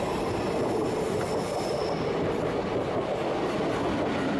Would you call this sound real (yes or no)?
yes